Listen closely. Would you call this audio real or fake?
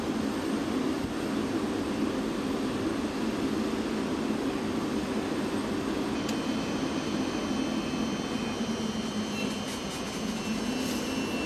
real